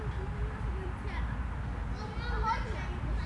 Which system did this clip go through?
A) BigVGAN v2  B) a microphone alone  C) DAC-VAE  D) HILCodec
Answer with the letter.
B